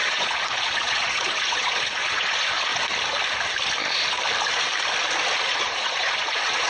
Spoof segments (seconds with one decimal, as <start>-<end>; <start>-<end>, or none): 0.0-2.7; 5.4-6.7